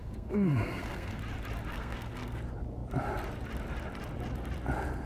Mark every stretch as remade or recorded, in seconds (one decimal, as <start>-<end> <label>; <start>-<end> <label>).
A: 0.0-1.2 remade; 1.2-1.7 recorded; 1.7-2.4 remade; 2.4-5.1 recorded